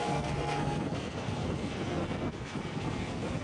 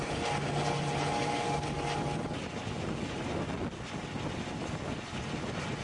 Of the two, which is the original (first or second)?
second